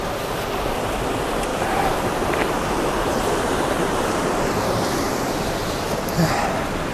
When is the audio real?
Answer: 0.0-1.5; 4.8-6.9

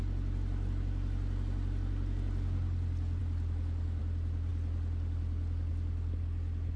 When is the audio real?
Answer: 0.0-6.8

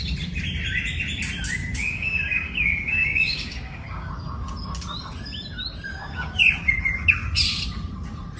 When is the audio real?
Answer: 0.0-1.6; 4.1-5.9; 6.4-8.4

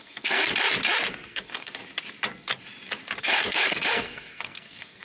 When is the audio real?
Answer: 0.4-1.1; 1.8-3.2

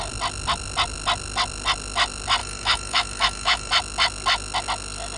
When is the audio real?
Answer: 0.0-2.4; 3.7-5.2

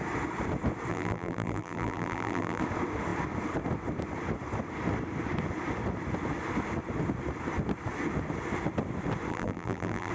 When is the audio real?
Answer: 0.0-0.9; 2.6-9.3